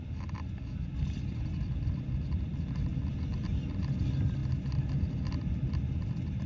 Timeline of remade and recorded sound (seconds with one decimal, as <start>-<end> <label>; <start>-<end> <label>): 0.0-6.5 recorded

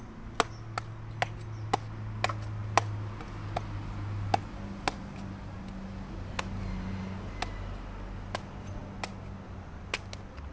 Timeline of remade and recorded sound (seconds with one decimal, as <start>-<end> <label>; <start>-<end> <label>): 0.0-10.5 recorded

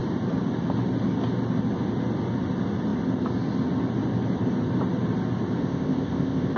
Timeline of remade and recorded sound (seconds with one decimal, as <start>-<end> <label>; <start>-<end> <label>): 0.0-5.6 recorded; 5.6-6.6 remade

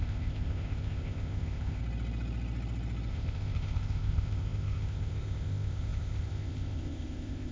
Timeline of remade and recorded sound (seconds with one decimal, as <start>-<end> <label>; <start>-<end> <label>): 0.0-1.8 remade; 1.8-3.1 recorded; 3.1-7.5 remade

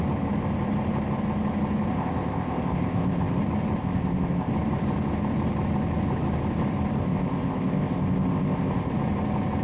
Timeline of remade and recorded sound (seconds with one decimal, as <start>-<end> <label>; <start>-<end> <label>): 0.0-1.9 recorded; 1.9-3.4 remade; 3.4-3.8 recorded; 3.8-4.5 remade; 4.5-7.0 recorded; 7.0-8.9 remade; 8.9-9.6 recorded

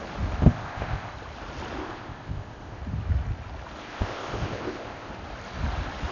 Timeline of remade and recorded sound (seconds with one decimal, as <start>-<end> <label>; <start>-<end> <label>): 0.0-0.4 recorded; 0.4-1.1 remade; 1.1-1.8 recorded; 1.8-2.8 remade; 2.8-3.8 recorded; 3.8-5.1 remade; 5.1-6.1 recorded

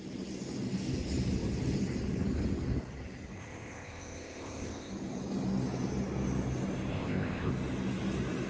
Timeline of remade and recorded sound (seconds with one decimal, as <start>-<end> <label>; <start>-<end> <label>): 0.0-3.4 recorded; 3.4-4.9 remade; 4.9-6.9 recorded; 6.9-7.5 remade; 7.5-8.5 recorded